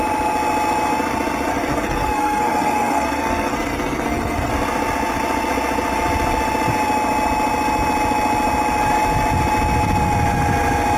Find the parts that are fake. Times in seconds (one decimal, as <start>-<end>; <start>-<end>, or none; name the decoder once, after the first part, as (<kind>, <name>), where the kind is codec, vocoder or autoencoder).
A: 1.5-4.5 (codec, SNAC)